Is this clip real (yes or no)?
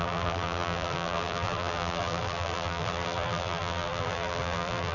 no